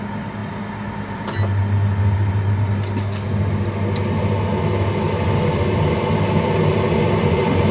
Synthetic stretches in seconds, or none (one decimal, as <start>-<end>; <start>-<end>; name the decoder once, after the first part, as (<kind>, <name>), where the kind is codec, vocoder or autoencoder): none